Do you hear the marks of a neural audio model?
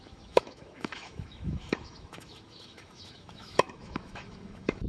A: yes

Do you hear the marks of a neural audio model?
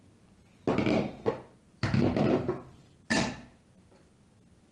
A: no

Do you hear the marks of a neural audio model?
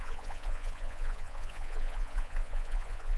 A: yes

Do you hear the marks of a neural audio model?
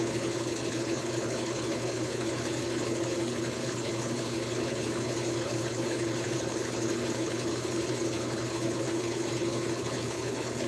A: yes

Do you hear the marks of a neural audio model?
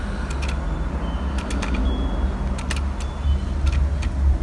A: no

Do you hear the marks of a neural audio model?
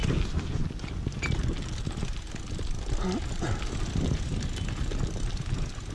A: no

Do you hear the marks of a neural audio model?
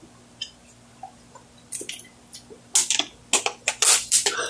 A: no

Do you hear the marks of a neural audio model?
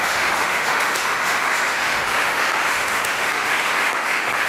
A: yes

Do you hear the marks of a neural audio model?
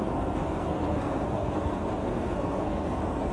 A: yes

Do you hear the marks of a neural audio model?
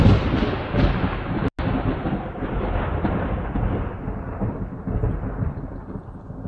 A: no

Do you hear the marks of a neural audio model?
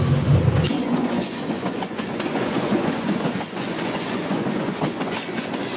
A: yes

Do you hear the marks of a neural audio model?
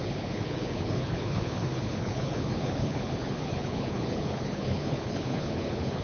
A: yes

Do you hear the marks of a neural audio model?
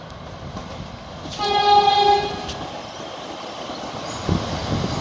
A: no